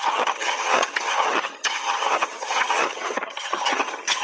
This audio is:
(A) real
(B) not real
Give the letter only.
B